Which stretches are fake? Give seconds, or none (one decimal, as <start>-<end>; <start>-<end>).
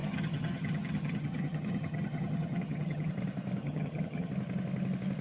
0.0-3.1; 3.6-4.3